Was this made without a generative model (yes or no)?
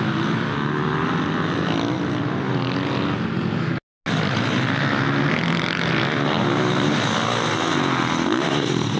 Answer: yes